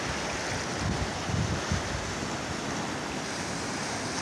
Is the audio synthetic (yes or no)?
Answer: no